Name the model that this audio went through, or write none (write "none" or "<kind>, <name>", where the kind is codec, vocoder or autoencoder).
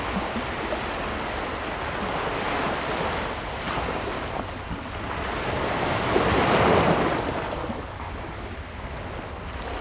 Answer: none